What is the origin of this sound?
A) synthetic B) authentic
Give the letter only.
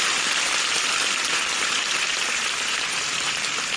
A